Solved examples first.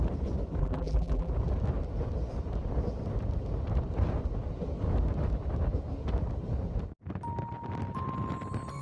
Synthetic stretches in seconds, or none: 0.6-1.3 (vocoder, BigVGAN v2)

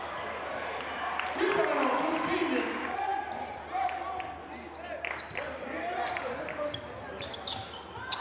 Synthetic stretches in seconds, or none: none

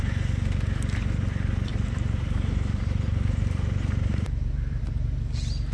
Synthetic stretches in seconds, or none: 1.7-4.8 (vocoder, BigVGAN v2)